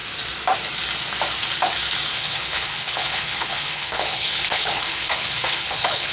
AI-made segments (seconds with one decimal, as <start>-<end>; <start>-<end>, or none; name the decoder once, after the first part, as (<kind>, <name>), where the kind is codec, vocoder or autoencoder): 2.1-6.1 (codec, HILCodec)